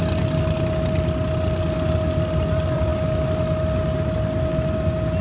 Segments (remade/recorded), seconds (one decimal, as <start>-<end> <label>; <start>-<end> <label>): 0.0-5.2 recorded